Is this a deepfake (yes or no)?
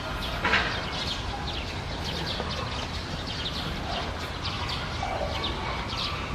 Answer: no